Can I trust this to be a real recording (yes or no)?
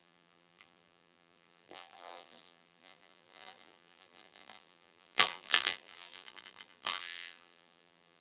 no